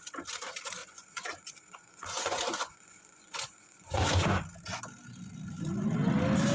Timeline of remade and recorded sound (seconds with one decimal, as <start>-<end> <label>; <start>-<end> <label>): 0.0-0.8 recorded; 0.8-4.4 remade; 4.4-6.5 recorded